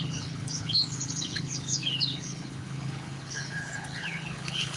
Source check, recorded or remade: remade